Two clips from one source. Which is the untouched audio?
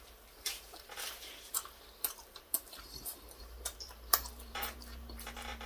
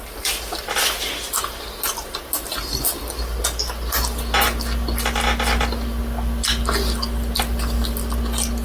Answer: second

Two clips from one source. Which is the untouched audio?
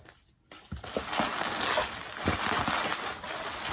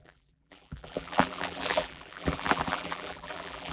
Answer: first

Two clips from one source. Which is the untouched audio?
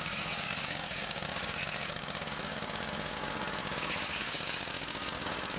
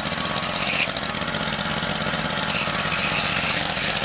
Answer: second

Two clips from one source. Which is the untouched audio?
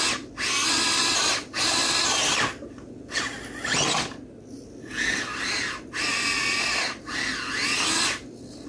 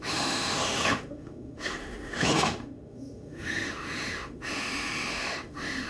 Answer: first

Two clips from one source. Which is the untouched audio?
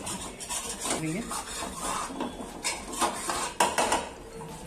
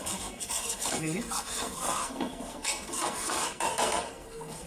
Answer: first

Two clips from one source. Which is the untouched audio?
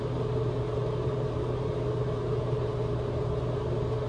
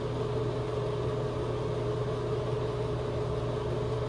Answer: second